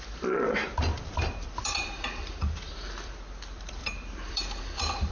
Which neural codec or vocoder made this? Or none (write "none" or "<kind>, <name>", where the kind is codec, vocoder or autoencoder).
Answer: vocoder, BigVGAN v2